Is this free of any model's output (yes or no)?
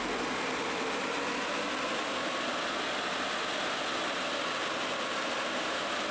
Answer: yes